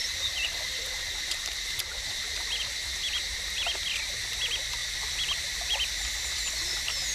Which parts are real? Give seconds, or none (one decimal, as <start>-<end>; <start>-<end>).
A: 2.6-4.8; 5.6-7.1